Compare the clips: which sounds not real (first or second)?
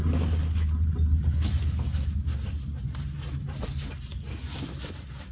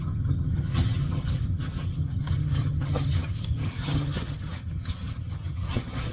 second